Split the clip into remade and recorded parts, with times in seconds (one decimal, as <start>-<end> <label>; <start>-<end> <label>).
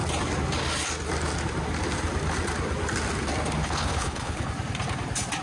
0.0-3.6 recorded; 3.6-4.5 remade; 4.5-5.4 recorded